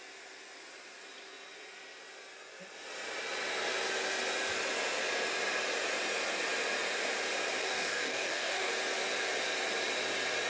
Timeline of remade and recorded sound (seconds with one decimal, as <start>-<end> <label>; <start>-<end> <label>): 0.0-7.6 recorded; 7.6-8.7 remade; 8.7-10.5 recorded